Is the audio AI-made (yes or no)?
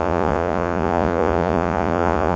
yes